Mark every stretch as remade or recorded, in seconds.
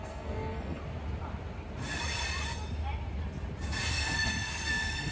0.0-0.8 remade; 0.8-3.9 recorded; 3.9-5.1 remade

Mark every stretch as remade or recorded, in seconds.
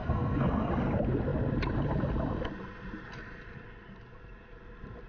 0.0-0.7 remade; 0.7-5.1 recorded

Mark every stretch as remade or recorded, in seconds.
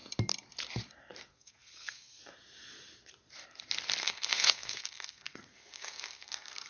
0.0-1.3 recorded; 1.3-2.2 remade; 2.2-4.0 recorded; 4.0-6.7 remade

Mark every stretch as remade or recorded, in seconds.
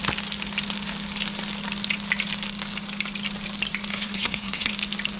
0.0-3.9 recorded; 3.9-4.7 remade; 4.7-5.2 recorded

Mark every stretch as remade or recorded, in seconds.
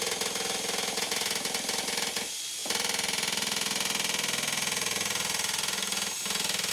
0.0-6.7 recorded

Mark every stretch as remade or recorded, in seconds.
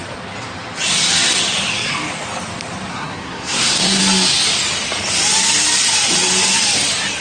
0.0-2.9 recorded; 2.9-4.0 remade; 4.0-7.2 recorded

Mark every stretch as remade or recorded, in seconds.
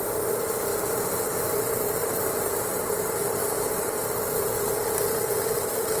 0.0-6.0 recorded